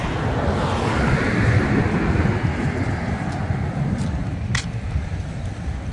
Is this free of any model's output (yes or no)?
yes